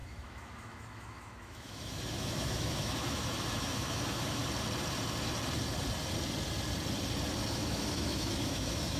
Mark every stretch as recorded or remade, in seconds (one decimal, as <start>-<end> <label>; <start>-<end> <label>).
0.0-4.4 remade; 4.4-7.5 recorded; 7.5-9.0 remade

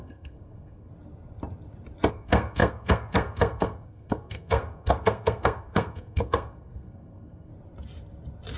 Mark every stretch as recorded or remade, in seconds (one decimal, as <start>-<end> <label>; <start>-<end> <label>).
0.0-0.9 remade; 0.9-2.1 recorded; 2.1-7.5 remade; 7.5-8.6 recorded

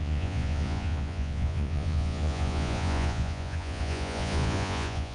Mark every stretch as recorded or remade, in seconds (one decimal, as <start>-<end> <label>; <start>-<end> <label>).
0.0-5.1 remade

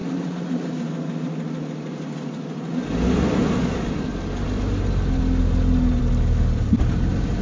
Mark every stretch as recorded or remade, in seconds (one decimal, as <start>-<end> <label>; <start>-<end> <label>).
0.0-7.4 recorded